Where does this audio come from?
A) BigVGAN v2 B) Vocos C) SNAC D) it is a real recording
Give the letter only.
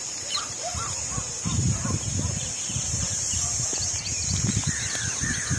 A